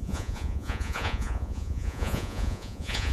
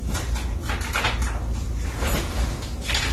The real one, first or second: second